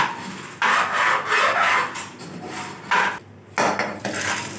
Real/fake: real